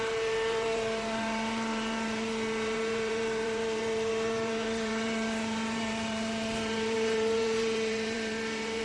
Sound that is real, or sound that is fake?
fake